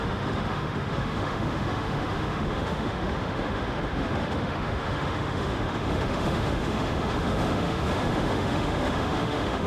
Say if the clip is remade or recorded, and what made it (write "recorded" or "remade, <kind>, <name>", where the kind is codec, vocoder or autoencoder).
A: remade, autoencoder, DAC-VAE